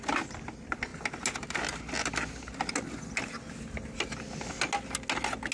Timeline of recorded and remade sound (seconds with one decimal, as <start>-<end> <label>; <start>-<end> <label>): 0.0-5.5 recorded